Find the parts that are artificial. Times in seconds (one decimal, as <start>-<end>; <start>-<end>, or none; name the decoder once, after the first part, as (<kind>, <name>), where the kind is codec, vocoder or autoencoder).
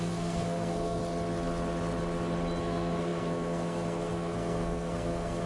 0.0-1.0 (codec, SNAC); 2.6-5.5